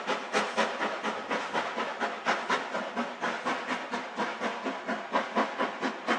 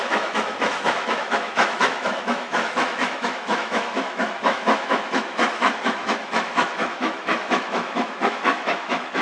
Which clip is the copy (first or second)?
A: second